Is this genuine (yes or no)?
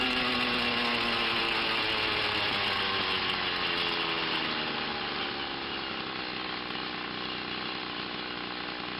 yes